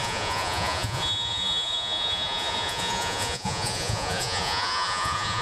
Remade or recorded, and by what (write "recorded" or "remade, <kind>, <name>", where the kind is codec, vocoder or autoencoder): remade, vocoder, Vocos